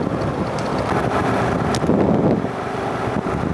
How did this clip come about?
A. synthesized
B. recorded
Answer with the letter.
B